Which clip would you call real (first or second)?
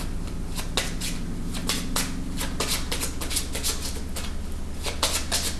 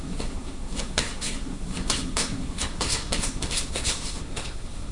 first